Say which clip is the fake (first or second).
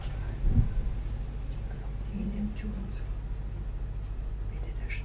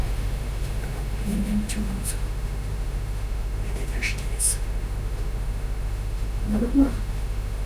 second